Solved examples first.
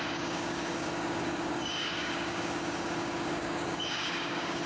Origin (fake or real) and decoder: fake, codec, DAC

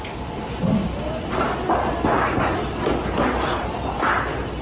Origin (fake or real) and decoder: real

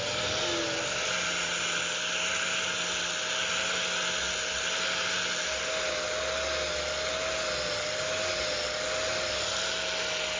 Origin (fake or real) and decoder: real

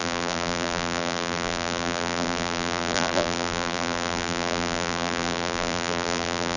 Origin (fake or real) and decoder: fake, vocoder, BigVGAN v2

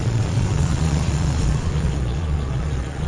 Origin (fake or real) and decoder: fake, vocoder, Vocos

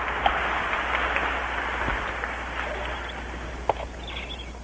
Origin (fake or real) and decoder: real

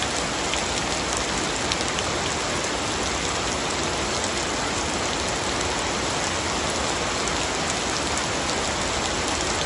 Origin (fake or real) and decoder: real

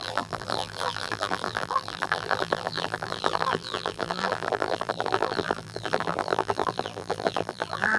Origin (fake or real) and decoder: fake, vocoder, BigVGAN v2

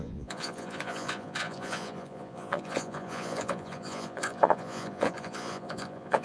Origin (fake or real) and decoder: fake, vocoder, Vocos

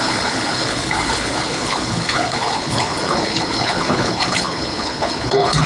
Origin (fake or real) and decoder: fake, codec, HILCodec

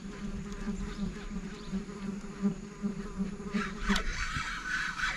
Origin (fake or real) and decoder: fake, vocoder, BigVGAN v2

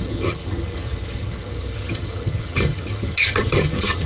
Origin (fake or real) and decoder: fake, vocoder, HiFi-GAN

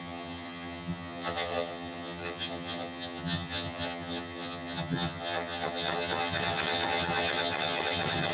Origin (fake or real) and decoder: fake, vocoder, HiFi-GAN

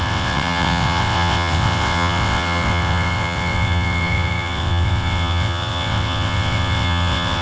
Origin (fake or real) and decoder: fake, vocoder, WaveNeXt